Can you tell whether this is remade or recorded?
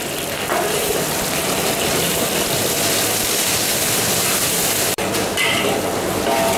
remade